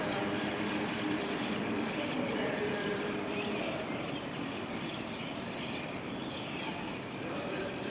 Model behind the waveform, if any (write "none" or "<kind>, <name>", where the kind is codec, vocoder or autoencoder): vocoder, BigVGAN v2